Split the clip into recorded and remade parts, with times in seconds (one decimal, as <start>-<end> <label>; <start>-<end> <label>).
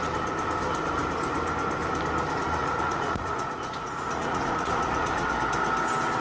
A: 0.0-2.6 recorded; 2.6-5.3 remade; 5.3-6.2 recorded